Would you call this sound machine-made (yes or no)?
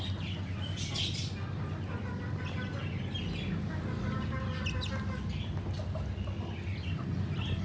no